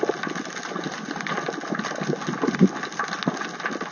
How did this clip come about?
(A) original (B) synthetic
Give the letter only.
A